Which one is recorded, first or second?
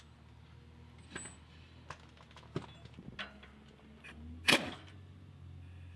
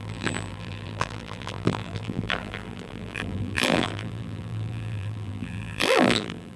first